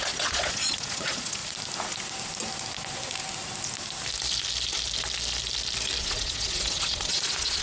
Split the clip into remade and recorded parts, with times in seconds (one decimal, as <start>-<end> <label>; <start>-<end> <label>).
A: 0.0-1.4 remade; 1.4-6.0 recorded; 6.0-7.6 remade

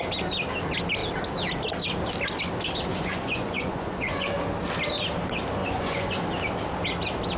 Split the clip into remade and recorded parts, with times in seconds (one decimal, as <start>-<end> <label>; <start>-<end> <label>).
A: 0.0-2.9 recorded; 2.9-4.3 remade; 4.3-5.6 recorded; 5.6-6.1 remade; 6.1-7.4 recorded